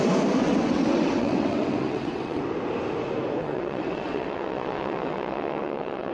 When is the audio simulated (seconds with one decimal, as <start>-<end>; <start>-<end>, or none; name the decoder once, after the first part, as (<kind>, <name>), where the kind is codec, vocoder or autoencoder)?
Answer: 0.4-2.4 (vocoder, WaveNeXt); 3.4-6.1